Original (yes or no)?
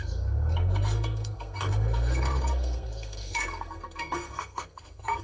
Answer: no